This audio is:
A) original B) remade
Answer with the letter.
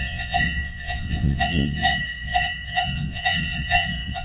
B